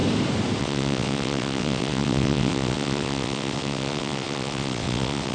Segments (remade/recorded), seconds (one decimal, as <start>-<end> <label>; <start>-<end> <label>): 0.0-0.6 recorded; 0.6-5.3 remade